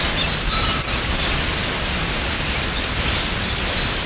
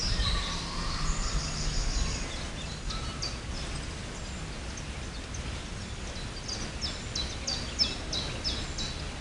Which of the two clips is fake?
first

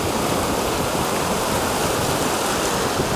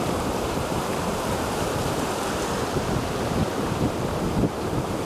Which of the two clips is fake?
second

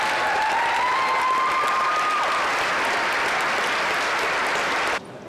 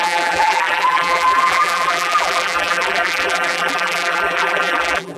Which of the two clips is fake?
second